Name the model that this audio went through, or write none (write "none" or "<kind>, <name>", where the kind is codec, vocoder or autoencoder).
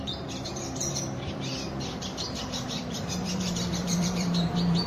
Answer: vocoder, BigVGAN v2